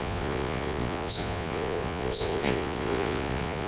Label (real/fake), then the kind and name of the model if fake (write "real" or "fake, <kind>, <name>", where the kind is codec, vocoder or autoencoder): fake, vocoder, Vocos